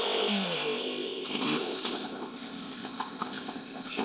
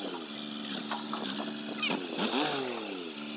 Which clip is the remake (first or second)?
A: first